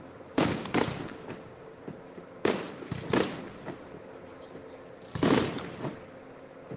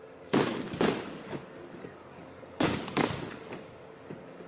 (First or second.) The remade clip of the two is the second